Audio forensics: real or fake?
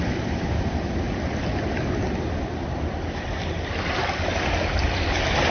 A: real